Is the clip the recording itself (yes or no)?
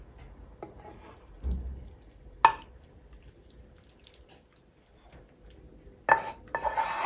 yes